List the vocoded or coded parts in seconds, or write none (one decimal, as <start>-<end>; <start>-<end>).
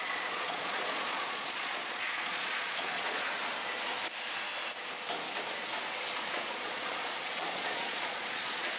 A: 0.0-3.3; 6.2-8.8